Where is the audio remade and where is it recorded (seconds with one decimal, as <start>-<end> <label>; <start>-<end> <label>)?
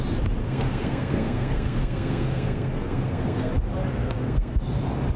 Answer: 0.0-0.4 recorded; 0.4-3.5 remade; 3.5-3.9 recorded; 3.9-4.6 remade; 4.6-5.2 recorded